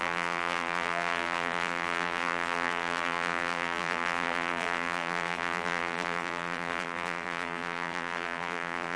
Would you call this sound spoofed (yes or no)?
yes